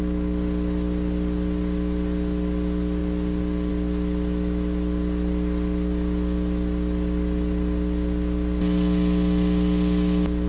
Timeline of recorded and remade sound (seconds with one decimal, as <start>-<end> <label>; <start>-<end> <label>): 0.0-10.5 recorded